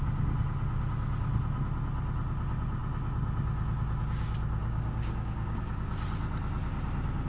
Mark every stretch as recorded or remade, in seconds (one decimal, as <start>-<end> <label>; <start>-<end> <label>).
0.0-4.6 recorded; 4.6-5.6 remade; 5.6-7.3 recorded